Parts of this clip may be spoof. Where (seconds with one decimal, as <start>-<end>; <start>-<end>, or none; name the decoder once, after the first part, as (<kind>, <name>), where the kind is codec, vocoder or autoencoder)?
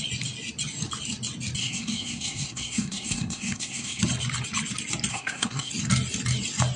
1.6-4.0 (codec, SNAC); 5.1-5.7